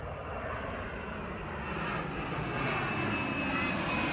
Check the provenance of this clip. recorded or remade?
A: recorded